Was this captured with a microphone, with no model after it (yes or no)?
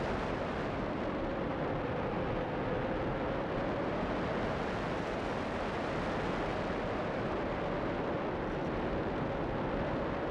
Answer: yes